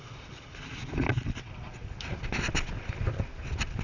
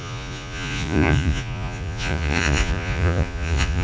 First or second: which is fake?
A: second